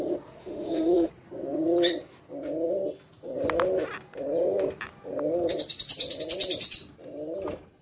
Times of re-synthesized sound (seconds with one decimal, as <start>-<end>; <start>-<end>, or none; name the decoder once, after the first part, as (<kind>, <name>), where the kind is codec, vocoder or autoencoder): 0.4-1.1 (autoencoder, DAC-VAE)